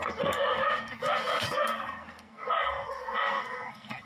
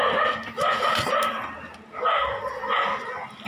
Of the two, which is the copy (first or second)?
first